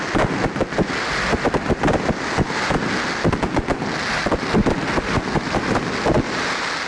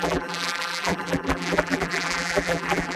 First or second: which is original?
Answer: first